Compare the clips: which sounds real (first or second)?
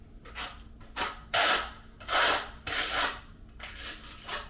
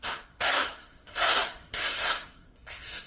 first